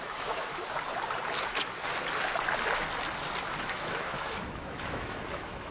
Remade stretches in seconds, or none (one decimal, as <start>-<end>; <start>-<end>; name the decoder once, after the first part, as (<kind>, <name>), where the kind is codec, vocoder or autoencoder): 0.0-0.5 (autoencoder, DAC-VAE); 3.6-5.7